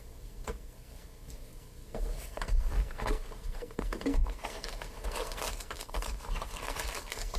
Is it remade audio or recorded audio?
remade